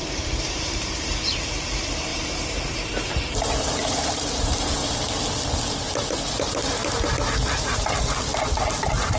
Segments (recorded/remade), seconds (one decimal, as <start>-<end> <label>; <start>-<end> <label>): 0.0-4.8 remade; 4.8-6.3 recorded; 6.3-6.8 remade; 6.8-7.6 recorded; 7.6-8.3 remade; 8.3-9.2 recorded